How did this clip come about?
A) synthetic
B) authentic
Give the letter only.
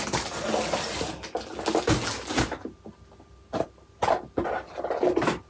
B